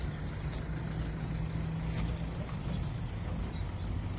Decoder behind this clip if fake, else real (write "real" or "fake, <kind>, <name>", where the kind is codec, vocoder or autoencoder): real